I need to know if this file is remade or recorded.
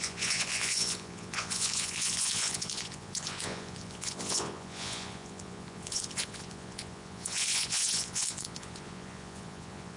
remade